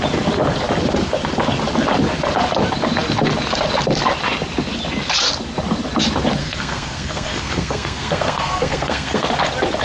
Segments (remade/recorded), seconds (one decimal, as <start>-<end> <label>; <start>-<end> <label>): 0.0-6.4 recorded; 6.4-9.3 remade; 9.3-9.8 recorded